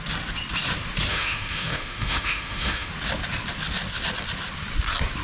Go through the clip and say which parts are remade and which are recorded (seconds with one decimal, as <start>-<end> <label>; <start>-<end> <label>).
0.0-1.1 recorded; 1.1-2.9 remade; 2.9-5.2 recorded